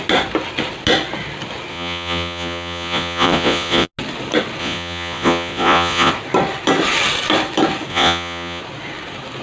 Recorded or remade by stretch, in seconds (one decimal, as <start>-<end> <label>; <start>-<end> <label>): 0.0-1.7 recorded; 1.7-3.9 remade; 3.9-4.6 recorded; 4.6-6.1 remade; 6.1-7.9 recorded; 7.9-8.6 remade; 8.6-9.4 recorded